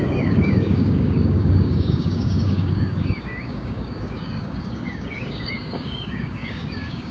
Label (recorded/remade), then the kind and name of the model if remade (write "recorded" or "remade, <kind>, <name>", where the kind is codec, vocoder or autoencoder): remade, codec, DAC